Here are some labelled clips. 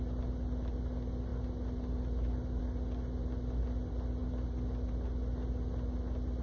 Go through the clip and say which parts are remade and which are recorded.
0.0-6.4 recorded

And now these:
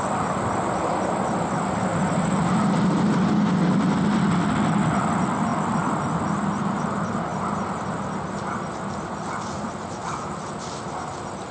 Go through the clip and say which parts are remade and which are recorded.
0.0-1.9 recorded; 1.9-3.0 remade; 3.0-5.5 recorded; 5.5-6.2 remade; 6.2-7.3 recorded; 7.3-9.7 remade; 9.7-11.5 recorded

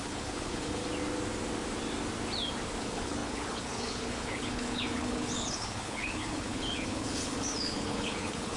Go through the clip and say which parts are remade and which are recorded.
0.0-0.8 remade; 0.8-2.8 recorded; 2.8-8.6 remade

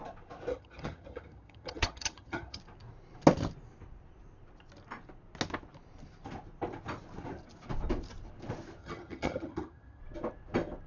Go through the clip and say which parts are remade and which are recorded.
0.0-0.5 recorded; 0.5-2.6 remade; 2.6-8.8 recorded; 8.8-10.0 remade; 10.0-10.9 recorded